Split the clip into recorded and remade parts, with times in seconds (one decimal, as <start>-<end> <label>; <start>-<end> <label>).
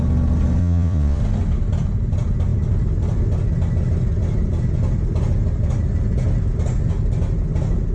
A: 0.0-0.6 recorded; 0.6-1.2 remade; 1.2-7.9 recorded